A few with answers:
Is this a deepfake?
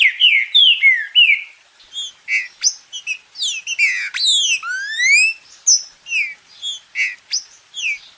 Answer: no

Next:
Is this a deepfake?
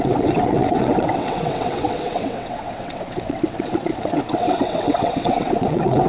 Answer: yes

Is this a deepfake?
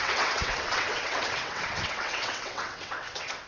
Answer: yes